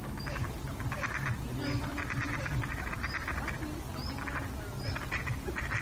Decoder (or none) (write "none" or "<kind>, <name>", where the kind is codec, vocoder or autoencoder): none